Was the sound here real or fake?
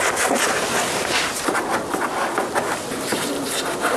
real